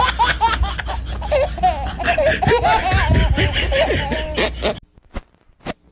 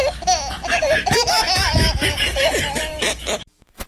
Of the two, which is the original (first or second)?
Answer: first